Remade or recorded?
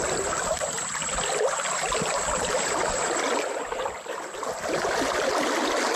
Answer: recorded